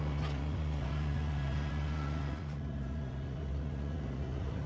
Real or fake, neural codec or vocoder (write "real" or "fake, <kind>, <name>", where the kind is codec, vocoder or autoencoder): fake, vocoder, Vocos